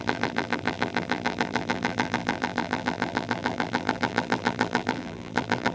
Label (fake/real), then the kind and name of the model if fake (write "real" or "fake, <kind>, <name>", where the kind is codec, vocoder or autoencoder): fake, vocoder, BigVGAN v2